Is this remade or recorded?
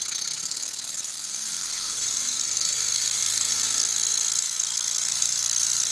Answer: remade